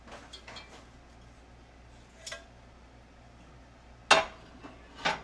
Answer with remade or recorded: recorded